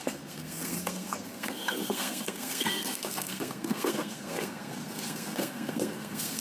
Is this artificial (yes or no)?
yes